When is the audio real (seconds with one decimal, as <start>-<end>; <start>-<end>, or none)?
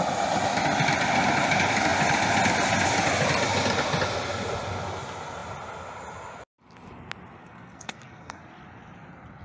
0.0-7.4; 8.4-9.4